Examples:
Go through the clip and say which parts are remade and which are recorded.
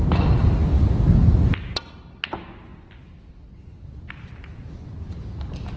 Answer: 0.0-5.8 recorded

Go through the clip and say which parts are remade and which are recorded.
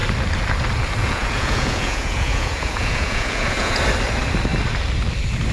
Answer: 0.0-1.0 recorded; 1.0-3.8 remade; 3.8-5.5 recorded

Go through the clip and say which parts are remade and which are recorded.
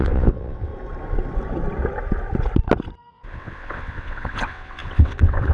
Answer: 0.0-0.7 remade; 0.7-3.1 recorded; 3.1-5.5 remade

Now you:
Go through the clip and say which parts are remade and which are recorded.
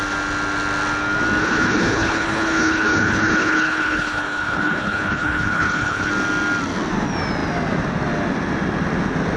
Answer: 0.0-1.4 recorded; 1.4-6.1 remade; 6.1-9.4 recorded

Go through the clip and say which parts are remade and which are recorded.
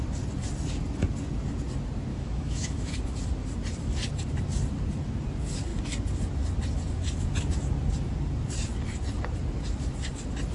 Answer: 0.0-2.1 recorded; 2.1-2.9 remade; 2.9-10.5 recorded